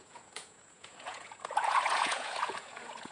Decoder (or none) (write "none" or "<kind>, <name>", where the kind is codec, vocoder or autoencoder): vocoder, Vocos